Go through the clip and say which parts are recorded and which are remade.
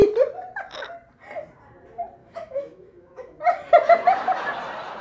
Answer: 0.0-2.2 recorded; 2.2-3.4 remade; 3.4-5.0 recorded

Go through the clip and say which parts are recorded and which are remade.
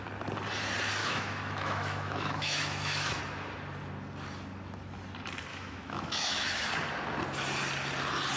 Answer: 0.0-1.0 recorded; 1.0-3.2 remade; 3.2-5.5 recorded; 5.5-6.7 remade; 6.7-8.4 recorded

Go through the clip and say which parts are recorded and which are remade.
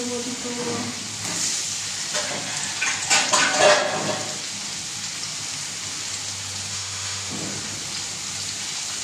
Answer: 0.0-6.7 recorded; 6.7-7.3 remade; 7.3-9.0 recorded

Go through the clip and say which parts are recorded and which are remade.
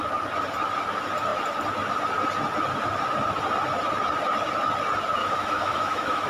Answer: 0.0-5.2 recorded; 5.2-6.3 remade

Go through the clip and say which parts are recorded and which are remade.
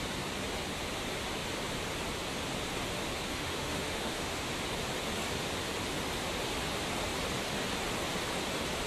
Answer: 0.0-3.3 recorded; 3.3-4.5 remade; 4.5-8.9 recorded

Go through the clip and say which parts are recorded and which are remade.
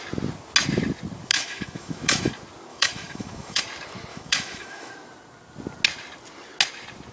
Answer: 0.0-1.3 recorded; 1.3-2.3 remade; 2.3-2.7 recorded; 2.7-3.6 remade; 3.6-4.1 recorded; 4.1-4.9 remade; 4.9-7.1 recorded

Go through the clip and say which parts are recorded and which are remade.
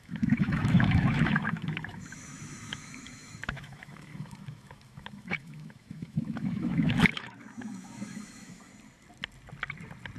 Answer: 0.0-8.7 remade; 8.7-10.2 recorded